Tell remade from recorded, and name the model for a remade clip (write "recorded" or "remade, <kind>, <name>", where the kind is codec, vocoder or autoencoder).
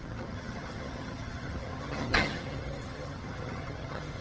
remade, vocoder, HiFi-GAN